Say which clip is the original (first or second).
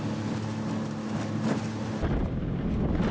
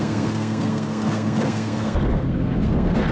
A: first